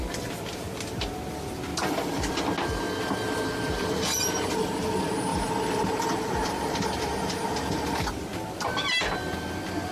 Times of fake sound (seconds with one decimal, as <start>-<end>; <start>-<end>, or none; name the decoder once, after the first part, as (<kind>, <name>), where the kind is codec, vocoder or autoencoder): none